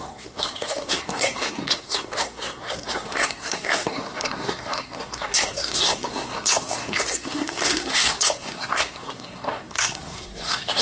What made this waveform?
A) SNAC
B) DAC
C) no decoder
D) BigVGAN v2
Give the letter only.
A